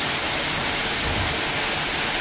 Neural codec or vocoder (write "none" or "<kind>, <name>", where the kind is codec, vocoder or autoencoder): none